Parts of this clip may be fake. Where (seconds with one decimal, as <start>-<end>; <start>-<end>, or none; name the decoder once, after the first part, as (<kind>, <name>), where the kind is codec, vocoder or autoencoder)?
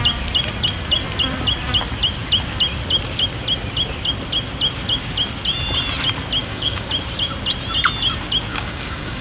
6.4-6.9 (codec, DAC); 8.5-9.2